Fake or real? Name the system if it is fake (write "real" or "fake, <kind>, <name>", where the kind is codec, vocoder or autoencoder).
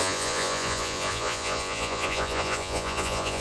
fake, vocoder, Vocos